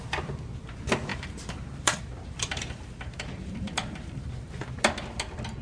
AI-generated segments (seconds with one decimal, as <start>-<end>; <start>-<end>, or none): 1.1-4.5

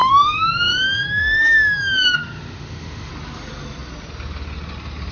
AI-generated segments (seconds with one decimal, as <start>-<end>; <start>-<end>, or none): 0.0-3.1

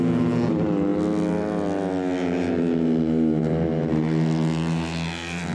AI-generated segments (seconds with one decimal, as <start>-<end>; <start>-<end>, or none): none

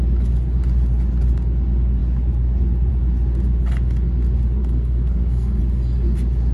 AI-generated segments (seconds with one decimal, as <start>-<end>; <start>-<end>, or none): 4.6-5.6

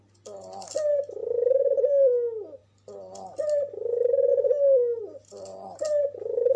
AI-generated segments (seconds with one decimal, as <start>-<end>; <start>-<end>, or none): 2.6-3.7; 5.5-6.6

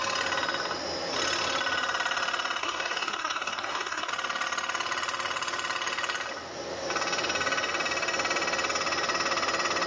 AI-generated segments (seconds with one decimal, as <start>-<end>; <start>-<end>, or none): 2.6-4.1

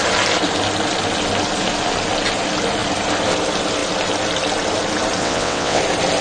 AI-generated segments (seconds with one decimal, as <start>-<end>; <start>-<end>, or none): 5.2-5.8